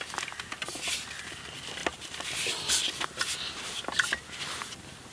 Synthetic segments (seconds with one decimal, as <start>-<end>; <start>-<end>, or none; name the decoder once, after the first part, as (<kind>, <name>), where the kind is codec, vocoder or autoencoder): none